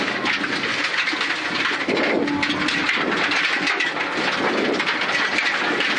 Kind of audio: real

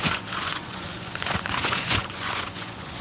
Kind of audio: fake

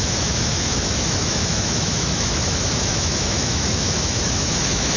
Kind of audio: fake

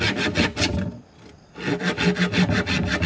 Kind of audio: real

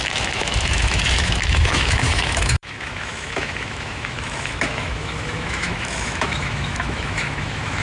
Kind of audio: fake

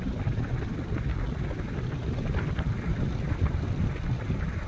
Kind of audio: real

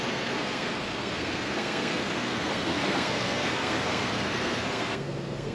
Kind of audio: fake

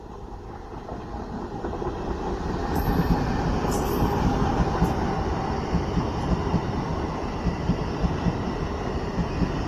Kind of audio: real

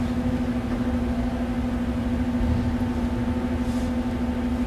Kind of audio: real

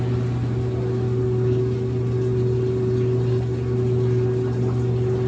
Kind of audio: real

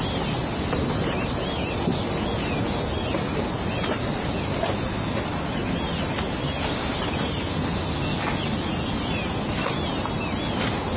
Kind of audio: real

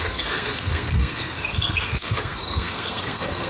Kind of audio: fake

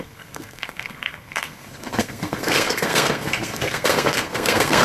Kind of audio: fake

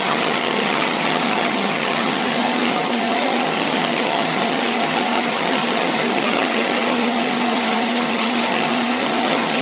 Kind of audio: fake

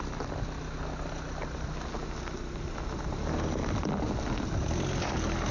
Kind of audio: real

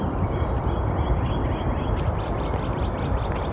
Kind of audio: real